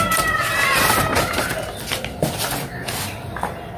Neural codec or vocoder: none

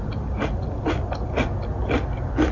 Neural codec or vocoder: none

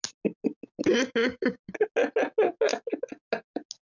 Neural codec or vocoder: none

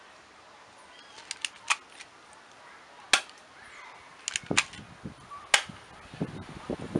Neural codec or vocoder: none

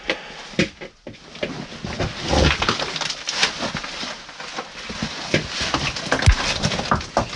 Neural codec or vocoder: none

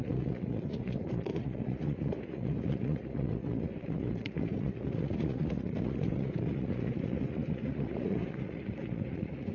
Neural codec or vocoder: vocoder, Vocos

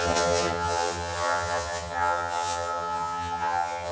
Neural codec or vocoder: vocoder, HiFi-GAN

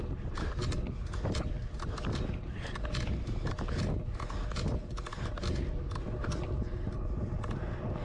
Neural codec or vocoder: none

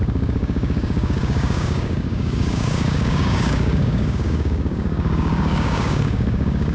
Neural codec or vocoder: codec, DAC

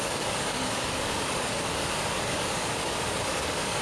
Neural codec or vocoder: codec, DAC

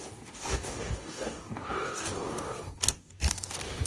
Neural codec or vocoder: codec, DAC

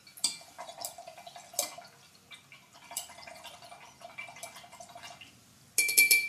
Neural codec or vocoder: none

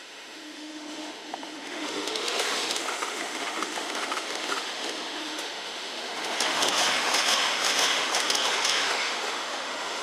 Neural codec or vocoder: autoencoder, DAC-VAE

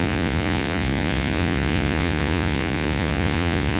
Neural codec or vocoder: vocoder, Vocos